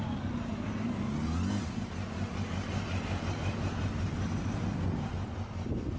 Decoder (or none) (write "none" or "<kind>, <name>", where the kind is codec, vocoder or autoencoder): none